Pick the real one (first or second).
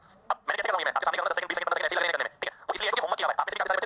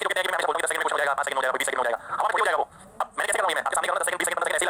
second